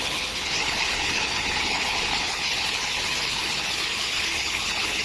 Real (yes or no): no